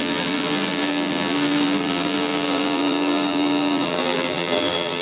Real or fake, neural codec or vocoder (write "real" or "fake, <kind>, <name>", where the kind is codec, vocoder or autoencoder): fake, vocoder, BigVGAN v2